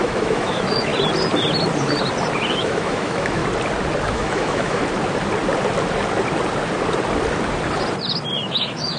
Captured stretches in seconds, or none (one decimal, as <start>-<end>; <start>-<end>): 0.9-2.5; 3.4-4.1; 4.8-8.4